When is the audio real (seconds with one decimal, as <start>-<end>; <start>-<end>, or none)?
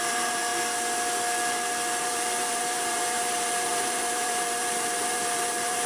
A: 0.5-2.0